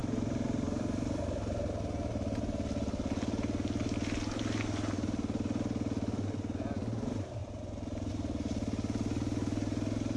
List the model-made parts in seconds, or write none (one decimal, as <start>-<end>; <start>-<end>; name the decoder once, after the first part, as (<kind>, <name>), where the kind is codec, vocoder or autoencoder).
0.0-1.7 (vocoder, BigVGAN v2); 7.4-8.1